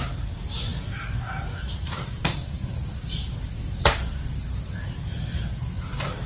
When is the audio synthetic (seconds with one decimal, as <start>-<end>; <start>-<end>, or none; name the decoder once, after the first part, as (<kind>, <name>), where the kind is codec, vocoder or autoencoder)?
0.0-6.3 (vocoder, BigVGAN v2)